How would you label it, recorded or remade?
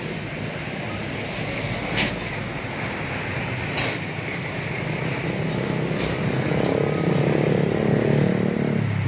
recorded